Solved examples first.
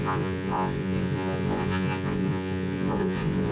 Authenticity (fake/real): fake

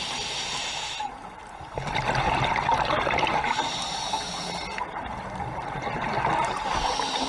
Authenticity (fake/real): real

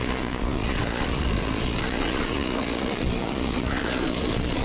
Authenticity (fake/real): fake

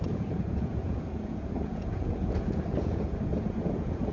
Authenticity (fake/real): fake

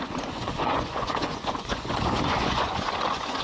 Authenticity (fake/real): fake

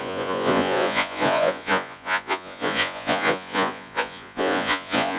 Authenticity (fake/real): fake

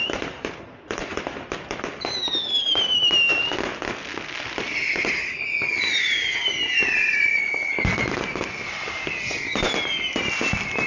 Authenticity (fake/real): real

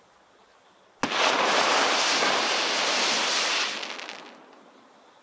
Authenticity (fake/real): real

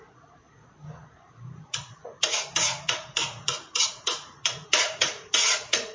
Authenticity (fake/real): fake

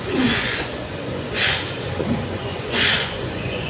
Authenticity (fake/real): fake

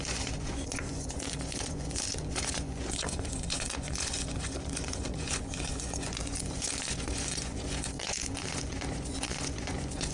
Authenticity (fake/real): fake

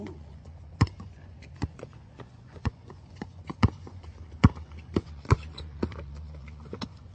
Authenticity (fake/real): fake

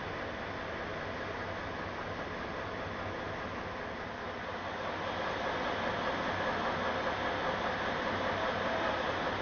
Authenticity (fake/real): real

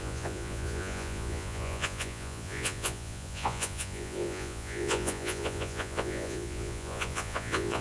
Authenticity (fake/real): fake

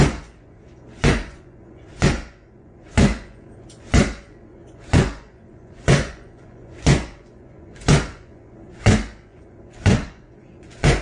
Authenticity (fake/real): fake